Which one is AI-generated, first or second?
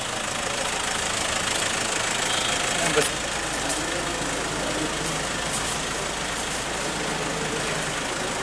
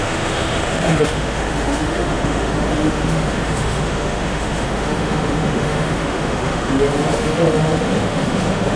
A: second